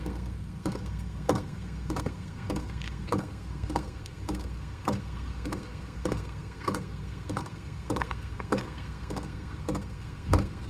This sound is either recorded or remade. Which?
remade